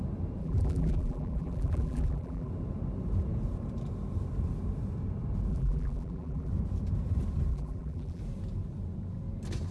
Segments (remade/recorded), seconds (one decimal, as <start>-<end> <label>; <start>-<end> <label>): 0.0-0.4 recorded; 0.4-2.5 remade; 2.5-5.5 recorded; 5.5-6.5 remade; 6.5-7.5 recorded; 7.5-8.2 remade; 8.2-9.7 recorded